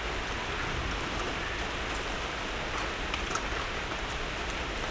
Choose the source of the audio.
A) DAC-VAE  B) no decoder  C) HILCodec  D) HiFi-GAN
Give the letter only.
B